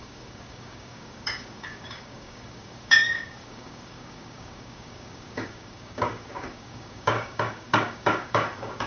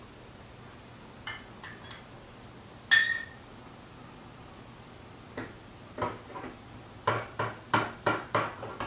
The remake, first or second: first